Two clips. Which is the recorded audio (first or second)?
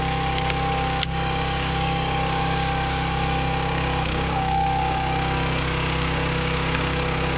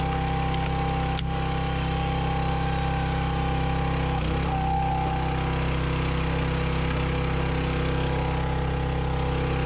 second